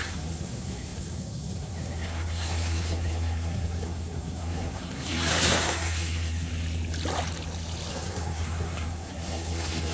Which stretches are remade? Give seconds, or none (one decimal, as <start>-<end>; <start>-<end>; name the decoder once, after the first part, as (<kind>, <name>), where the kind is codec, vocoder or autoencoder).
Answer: 0.0-6.5 (codec, SNAC); 7.9-9.9